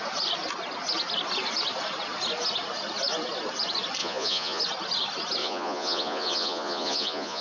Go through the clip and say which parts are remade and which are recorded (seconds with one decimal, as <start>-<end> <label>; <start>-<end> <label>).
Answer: 0.0-4.0 recorded; 4.0-4.6 remade; 4.6-5.4 recorded; 5.4-7.4 remade